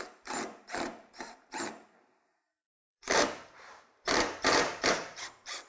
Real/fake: fake